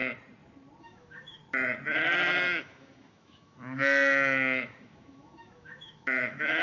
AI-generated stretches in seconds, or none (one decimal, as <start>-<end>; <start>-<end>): 0.8-1.4; 2.6-6.6